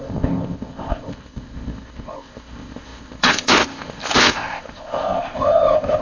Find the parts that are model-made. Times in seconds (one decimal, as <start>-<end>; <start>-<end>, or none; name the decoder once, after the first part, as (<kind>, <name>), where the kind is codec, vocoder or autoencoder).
0.0-6.0 (codec, ZipCodec)